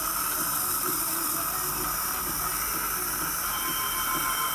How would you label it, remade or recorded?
recorded